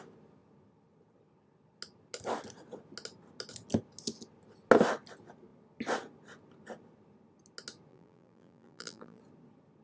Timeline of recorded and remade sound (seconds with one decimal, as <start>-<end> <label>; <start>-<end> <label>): 0.0-7.9 recorded; 7.9-9.2 remade; 9.2-9.8 recorded